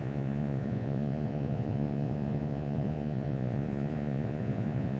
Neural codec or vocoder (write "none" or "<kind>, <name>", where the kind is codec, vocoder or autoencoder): vocoder, Vocos